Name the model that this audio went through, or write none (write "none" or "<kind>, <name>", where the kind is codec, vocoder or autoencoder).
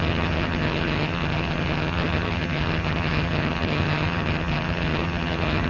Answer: vocoder, HiFi-GAN